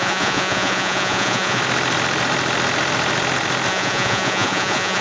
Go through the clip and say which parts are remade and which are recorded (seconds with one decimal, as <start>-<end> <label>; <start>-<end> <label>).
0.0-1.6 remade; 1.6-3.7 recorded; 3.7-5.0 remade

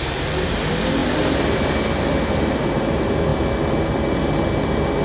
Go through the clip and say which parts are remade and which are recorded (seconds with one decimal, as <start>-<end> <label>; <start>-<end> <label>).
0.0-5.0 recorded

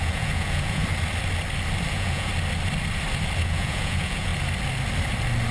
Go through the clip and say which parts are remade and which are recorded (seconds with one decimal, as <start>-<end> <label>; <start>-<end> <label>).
0.0-0.8 remade; 0.8-1.9 recorded; 1.9-2.3 remade; 2.3-3.4 recorded; 3.4-4.3 remade; 4.3-5.5 recorded